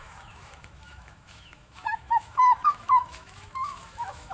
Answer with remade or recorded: remade